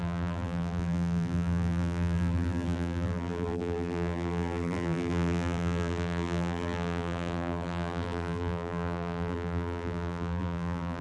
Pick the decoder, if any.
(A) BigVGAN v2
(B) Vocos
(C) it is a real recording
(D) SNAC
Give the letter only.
A